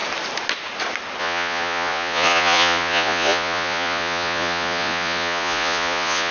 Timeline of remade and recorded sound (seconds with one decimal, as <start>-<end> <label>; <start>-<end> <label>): 0.0-1.2 recorded; 1.2-6.3 remade